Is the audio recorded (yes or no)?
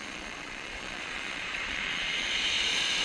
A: no